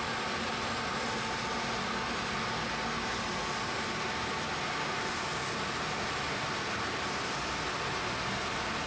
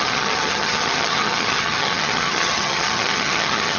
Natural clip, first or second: first